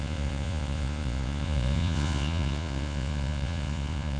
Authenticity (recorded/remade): remade